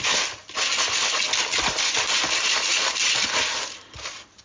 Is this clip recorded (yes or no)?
yes